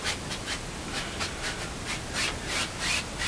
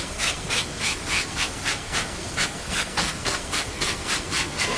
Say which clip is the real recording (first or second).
first